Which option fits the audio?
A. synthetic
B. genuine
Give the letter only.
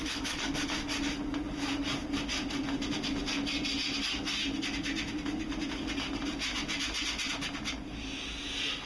B